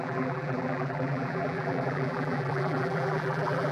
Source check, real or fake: fake